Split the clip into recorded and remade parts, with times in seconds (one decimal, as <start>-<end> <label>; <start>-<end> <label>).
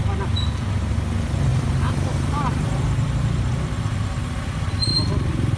0.0-1.5 recorded; 1.5-4.9 remade; 4.9-5.6 recorded